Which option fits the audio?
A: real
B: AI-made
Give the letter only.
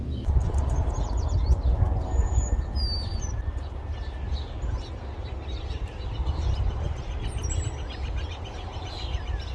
A